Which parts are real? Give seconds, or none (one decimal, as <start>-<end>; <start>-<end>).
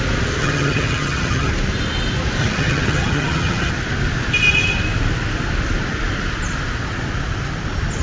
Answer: 0.0-0.4; 1.5-2.4; 3.7-8.0